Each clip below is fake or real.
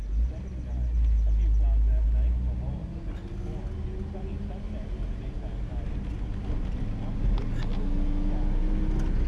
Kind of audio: real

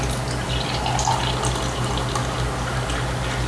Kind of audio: real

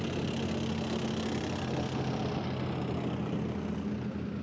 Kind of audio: real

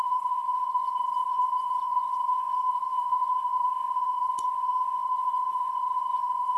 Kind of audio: fake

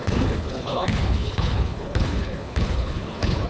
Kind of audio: fake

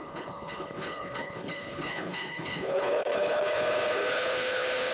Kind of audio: fake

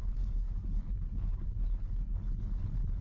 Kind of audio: fake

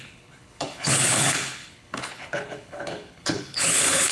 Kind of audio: fake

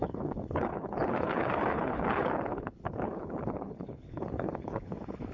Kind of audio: fake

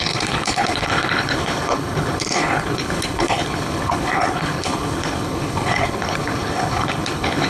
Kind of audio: fake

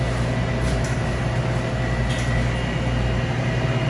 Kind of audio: real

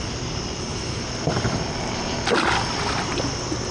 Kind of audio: real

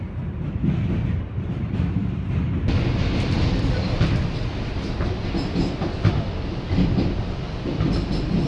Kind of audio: real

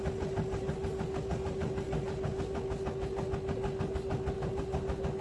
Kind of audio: real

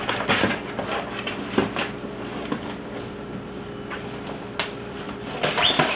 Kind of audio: real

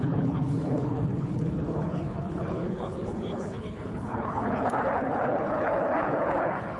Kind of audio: fake